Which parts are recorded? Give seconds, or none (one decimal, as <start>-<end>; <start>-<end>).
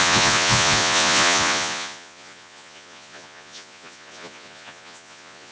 none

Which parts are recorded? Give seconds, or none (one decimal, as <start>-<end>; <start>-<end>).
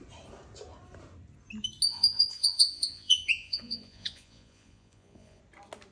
0.0-1.9; 5.4-5.9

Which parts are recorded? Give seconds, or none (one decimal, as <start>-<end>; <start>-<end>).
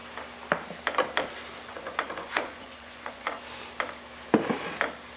0.0-1.7; 3.4-5.2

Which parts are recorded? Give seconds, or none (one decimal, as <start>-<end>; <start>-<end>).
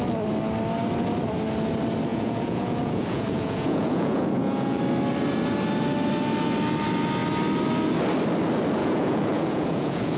0.0-2.1; 4.8-8.8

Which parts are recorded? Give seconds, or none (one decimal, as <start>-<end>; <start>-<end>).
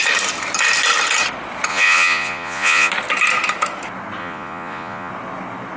0.0-1.7; 2.9-4.2; 5.1-5.8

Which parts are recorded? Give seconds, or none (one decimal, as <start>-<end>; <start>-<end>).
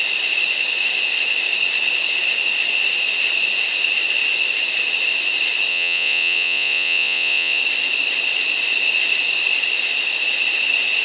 0.0-5.7; 7.6-11.0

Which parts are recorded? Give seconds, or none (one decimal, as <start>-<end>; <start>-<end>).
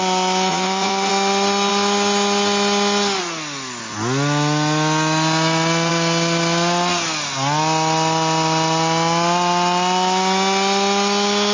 0.0-0.5; 1.1-11.5